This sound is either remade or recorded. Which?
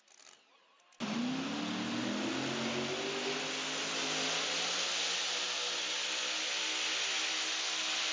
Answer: recorded